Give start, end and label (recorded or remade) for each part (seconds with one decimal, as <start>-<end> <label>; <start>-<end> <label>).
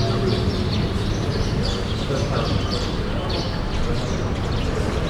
0.0-0.5 recorded; 0.5-3.6 remade; 3.6-5.1 recorded